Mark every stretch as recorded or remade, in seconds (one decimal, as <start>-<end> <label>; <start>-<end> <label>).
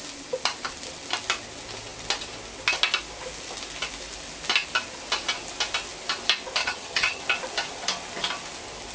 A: 0.0-6.6 recorded; 6.6-7.2 remade; 7.2-8.9 recorded